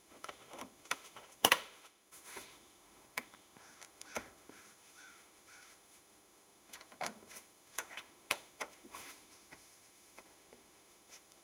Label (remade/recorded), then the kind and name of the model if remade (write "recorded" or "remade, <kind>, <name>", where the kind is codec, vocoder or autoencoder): remade, autoencoder, DAC-VAE